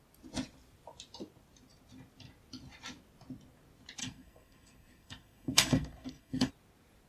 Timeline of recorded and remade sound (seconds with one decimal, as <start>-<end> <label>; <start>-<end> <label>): 0.0-4.0 recorded; 4.0-6.5 remade; 6.5-7.1 recorded